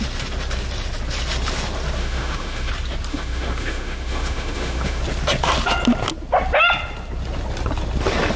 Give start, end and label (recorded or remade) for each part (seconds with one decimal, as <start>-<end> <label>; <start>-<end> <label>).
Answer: 0.0-2.0 recorded; 2.0-2.7 remade; 2.7-3.1 recorded; 3.1-5.0 remade; 5.0-8.4 recorded